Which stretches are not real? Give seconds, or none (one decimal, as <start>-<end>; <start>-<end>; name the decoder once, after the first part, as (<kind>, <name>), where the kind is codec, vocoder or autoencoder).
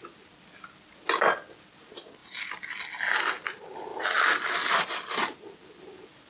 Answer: none